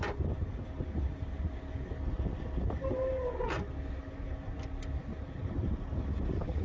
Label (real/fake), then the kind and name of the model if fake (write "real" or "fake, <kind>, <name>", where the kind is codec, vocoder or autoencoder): real